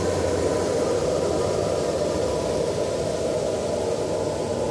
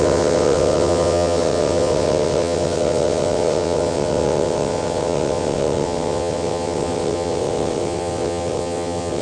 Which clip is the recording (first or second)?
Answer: first